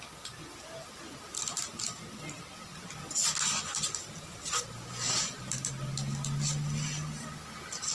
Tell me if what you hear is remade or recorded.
recorded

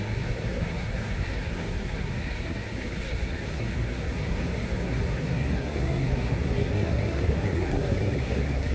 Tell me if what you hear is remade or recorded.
remade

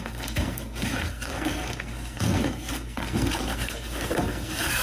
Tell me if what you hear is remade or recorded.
remade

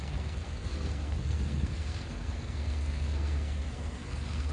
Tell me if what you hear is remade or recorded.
remade